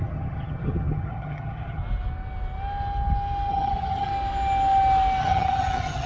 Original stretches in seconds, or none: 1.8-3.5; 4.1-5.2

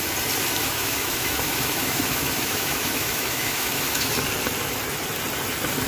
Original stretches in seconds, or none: 0.0-0.6; 4.1-5.9

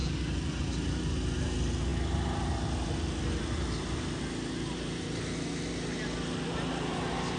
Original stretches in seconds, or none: 0.0-7.4